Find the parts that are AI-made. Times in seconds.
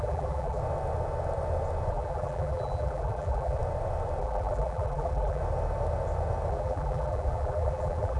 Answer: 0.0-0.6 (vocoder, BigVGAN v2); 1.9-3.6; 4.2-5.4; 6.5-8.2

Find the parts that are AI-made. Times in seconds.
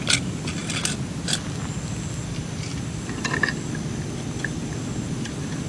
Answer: none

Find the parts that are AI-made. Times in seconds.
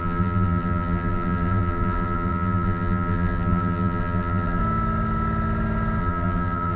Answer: 0.0-4.6 (vocoder, BigVGAN v2); 6.0-6.8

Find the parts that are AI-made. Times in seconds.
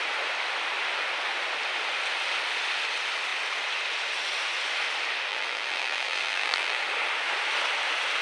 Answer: 5.3-6.8 (vocoder, BigVGAN v2)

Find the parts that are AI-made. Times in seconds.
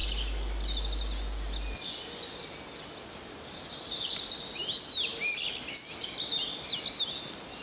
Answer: none